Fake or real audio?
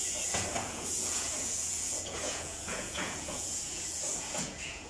fake